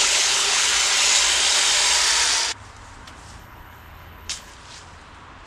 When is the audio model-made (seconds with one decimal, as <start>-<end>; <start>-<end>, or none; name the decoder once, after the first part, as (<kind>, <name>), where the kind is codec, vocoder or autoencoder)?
0.0-0.7 (codec, HILCodec); 3.4-4.5